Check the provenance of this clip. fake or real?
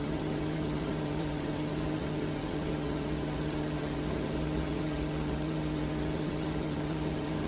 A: fake